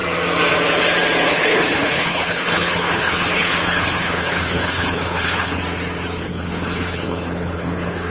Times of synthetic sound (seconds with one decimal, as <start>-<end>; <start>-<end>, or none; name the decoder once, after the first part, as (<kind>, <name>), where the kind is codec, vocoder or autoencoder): 1.3-5.6 (codec, HILCodec); 6.2-8.1